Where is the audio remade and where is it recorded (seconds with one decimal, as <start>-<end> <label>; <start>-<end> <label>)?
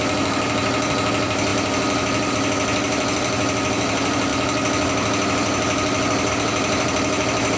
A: 0.0-7.6 recorded